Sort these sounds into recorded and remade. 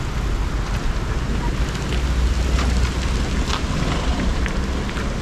recorded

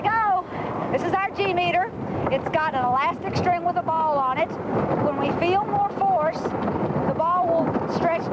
recorded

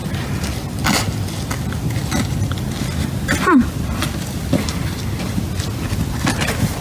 recorded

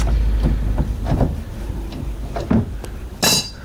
recorded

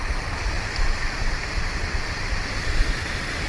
recorded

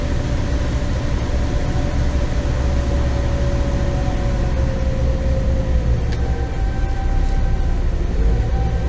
recorded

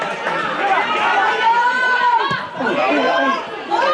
remade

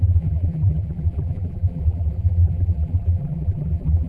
remade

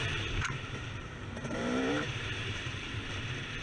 remade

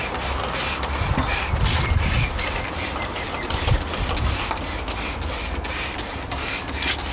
recorded